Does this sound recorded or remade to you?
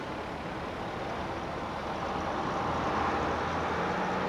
recorded